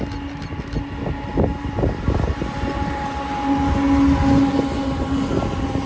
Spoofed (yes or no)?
no